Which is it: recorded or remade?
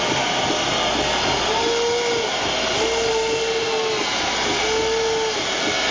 recorded